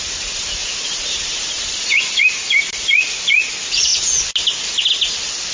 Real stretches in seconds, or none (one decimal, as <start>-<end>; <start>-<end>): 0.0-0.6; 2.2-5.5